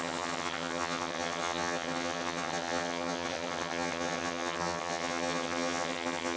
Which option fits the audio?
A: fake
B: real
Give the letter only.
A